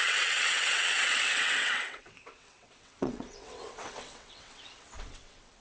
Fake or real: fake